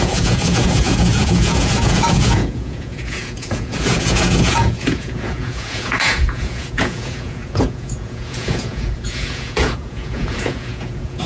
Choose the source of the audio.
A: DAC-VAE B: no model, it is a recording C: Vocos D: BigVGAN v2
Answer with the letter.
C